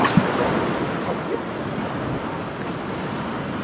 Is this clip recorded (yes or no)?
yes